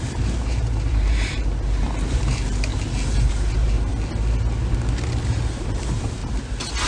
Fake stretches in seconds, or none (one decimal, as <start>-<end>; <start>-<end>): 0.0-2.7; 3.3-3.9; 5.7-6.2